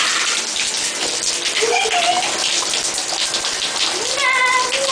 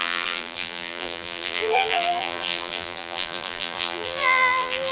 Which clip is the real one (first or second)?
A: first